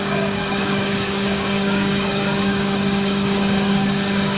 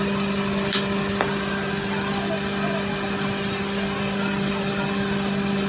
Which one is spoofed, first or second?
first